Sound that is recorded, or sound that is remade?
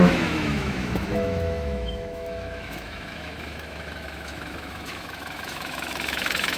remade